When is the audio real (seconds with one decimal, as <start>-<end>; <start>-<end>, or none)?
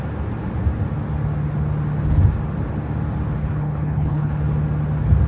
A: 0.0-3.4; 4.4-5.3